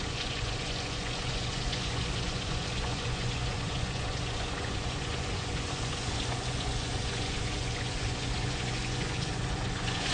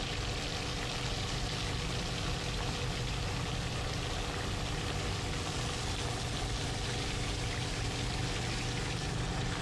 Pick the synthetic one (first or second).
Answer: first